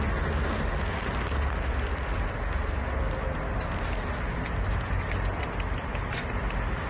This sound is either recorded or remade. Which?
recorded